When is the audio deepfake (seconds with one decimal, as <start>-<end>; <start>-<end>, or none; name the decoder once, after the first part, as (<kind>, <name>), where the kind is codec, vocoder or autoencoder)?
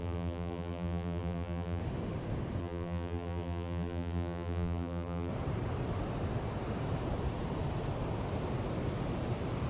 0.0-1.8 (vocoder, BigVGAN v2); 2.6-5.3